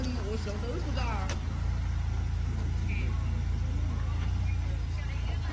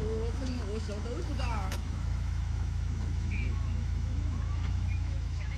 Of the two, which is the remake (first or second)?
second